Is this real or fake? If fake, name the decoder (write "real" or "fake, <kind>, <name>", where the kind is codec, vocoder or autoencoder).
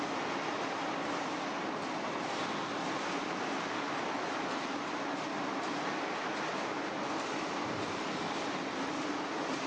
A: real